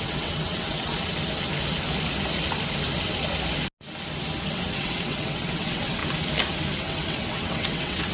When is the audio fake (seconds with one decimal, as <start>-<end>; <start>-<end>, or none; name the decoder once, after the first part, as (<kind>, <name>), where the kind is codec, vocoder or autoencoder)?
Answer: 0.0-1.1 (vocoder, WaveNeXt); 4.5-6.0; 6.8-8.1